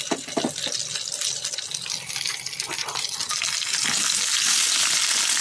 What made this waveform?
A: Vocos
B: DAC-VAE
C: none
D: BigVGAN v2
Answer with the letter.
C